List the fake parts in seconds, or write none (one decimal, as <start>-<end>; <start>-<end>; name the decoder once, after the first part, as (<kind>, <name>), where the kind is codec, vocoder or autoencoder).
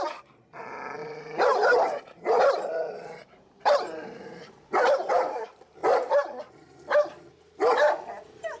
0.0-5.8 (vocoder, BigVGAN v2)